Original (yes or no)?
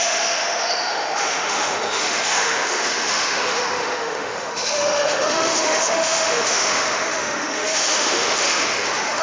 no